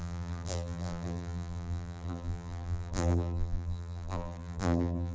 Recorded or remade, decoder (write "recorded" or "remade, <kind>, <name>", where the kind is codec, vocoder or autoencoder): remade, vocoder, BigVGAN v2